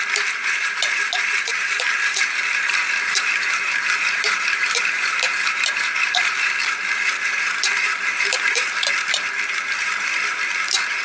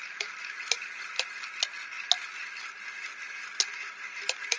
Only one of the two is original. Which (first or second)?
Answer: second